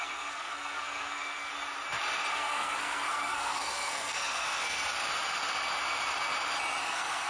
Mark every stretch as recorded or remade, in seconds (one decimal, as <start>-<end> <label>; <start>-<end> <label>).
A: 0.0-1.5 remade; 1.5-2.3 recorded; 2.3-4.8 remade; 4.8-6.8 recorded; 6.8-7.3 remade